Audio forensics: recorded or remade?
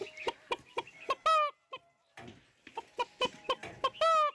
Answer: recorded